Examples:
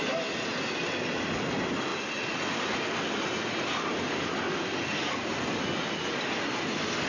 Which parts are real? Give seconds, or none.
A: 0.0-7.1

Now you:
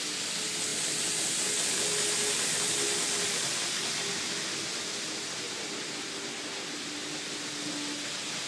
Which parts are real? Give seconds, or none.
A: 0.0-8.5

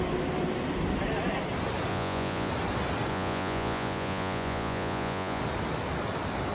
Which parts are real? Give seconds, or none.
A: 0.0-1.9; 2.5-3.1; 5.4-6.5

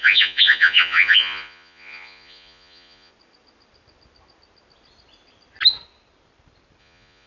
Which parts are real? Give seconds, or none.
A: 3.1-6.8